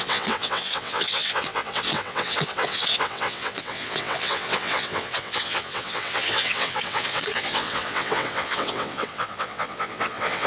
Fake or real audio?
fake